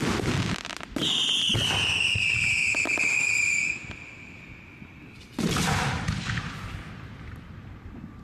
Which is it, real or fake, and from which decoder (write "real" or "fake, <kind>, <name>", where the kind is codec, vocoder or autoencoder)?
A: real